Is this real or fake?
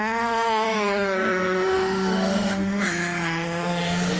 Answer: fake